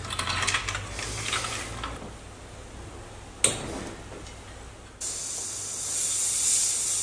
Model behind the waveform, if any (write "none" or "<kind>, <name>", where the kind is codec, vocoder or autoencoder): none